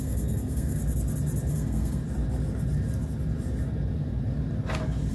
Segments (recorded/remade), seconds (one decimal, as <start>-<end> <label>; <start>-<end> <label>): 0.0-0.8 remade; 0.8-1.5 recorded; 1.5-2.0 remade; 2.0-5.1 recorded